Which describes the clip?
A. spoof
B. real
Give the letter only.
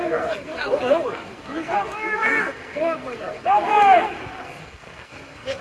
A